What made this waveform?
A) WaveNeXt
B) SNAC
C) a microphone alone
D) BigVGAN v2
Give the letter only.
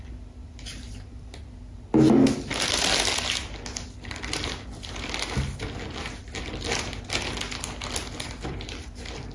C